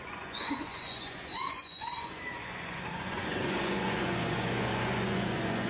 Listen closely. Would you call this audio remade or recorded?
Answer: remade